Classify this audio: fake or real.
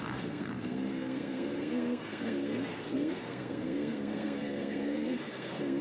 fake